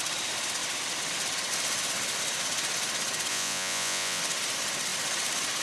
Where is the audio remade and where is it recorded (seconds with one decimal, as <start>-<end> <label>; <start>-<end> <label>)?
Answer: 0.0-3.3 recorded; 3.3-4.2 remade; 4.2-5.6 recorded